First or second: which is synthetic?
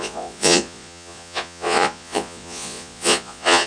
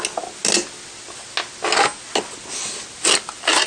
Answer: first